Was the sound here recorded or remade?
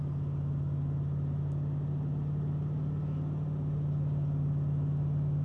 recorded